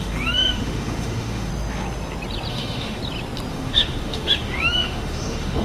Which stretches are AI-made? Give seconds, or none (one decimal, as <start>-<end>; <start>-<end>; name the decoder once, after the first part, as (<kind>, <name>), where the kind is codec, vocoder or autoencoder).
0.0-1.5 (autoencoder, DAC-VAE); 2.5-3.0; 3.5-5.6